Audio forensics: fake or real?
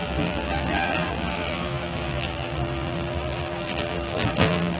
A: fake